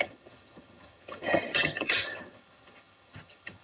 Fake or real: fake